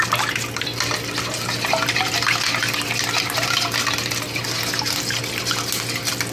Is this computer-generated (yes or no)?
no